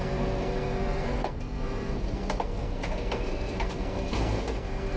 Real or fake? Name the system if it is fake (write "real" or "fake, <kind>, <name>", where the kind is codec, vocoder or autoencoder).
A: fake, codec, SNAC